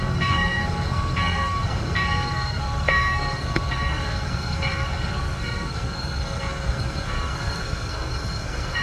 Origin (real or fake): fake